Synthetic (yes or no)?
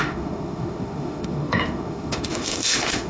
yes